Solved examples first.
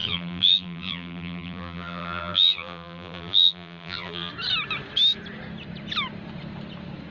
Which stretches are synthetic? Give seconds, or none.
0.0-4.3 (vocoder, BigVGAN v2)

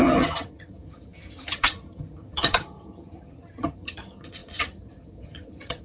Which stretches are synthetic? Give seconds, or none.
0.0-5.8 (vocoder, HiFi-GAN)

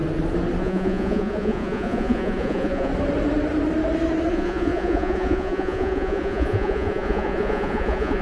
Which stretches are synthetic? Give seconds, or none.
0.6-2.9 (vocoder, Vocos); 4.3-8.2

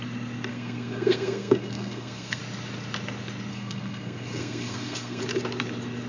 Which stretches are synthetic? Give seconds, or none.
0.5-2.4 (codec, SNAC); 3.5-5.2

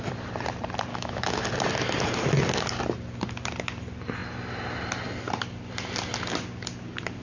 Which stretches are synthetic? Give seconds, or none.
0.9-1.4 (autoencoder, DAC-VAE)

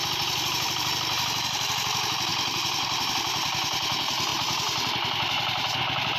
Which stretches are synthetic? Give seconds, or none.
none